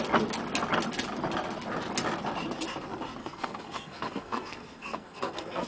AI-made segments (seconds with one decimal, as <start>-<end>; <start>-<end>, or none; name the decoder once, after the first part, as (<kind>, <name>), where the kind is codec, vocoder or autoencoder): 3.2-5.7 (codec, SNAC)